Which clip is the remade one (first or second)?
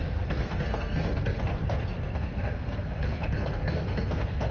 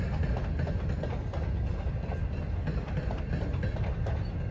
first